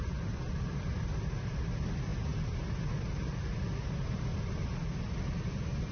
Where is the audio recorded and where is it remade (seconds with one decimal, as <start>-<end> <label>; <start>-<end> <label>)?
0.0-5.9 recorded